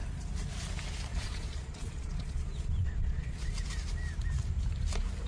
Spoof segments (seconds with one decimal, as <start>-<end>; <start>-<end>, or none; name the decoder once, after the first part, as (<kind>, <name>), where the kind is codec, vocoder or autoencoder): 1.1-3.5 (vocoder, Vocos)